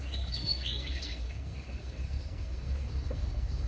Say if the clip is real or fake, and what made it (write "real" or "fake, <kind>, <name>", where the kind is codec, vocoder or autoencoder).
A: fake, codec, SNAC